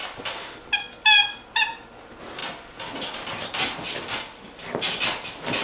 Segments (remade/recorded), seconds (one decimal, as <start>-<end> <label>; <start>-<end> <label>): 0.0-5.6 recorded